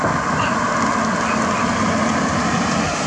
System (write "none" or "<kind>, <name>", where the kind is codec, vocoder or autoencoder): none